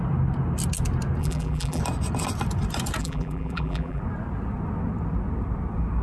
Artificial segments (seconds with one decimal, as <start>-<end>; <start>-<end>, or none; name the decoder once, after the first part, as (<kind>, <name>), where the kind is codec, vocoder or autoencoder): 1.2-1.8 (vocoder, BigVGAN v2); 3.0-4.0